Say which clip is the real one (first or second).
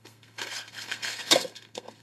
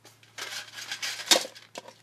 second